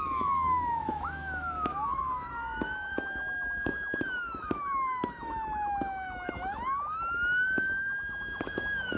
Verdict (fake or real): fake